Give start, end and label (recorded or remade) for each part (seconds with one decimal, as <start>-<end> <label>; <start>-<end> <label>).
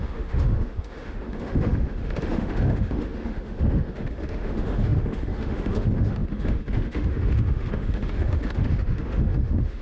0.0-9.8 remade